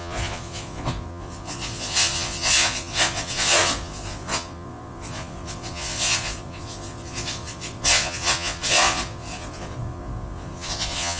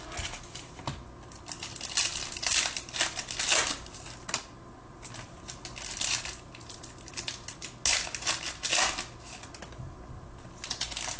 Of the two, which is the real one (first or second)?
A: second